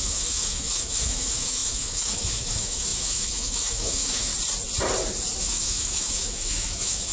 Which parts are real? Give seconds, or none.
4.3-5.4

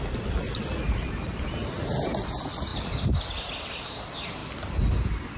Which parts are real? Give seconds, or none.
0.0-5.4

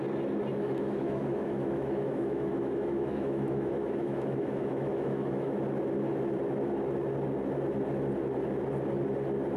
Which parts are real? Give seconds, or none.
0.0-0.5; 5.6-9.6

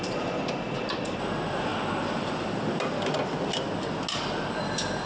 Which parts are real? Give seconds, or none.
0.0-5.1

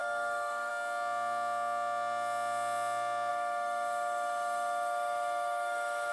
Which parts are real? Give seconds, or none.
0.7-3.3